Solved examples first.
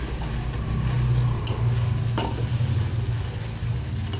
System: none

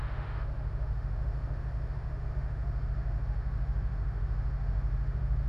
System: autoencoder, DAC-VAE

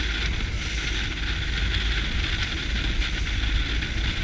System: none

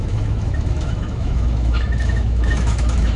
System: autoencoder, DAC-VAE